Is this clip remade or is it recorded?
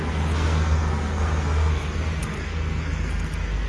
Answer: remade